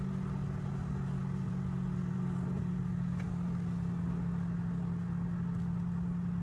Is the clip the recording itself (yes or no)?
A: yes